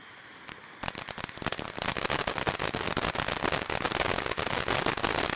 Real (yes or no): yes